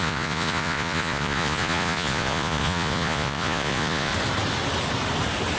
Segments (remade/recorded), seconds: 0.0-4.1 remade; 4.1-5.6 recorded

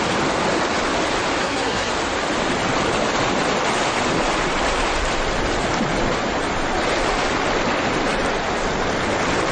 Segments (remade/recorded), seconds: 0.0-1.4 recorded; 1.4-1.9 remade; 1.9-9.5 recorded

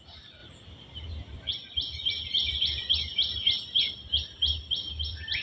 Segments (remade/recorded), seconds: 0.0-5.4 recorded